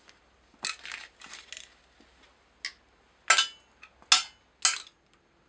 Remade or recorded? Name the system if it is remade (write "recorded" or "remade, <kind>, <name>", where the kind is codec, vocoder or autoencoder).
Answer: recorded